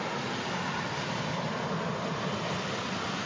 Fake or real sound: real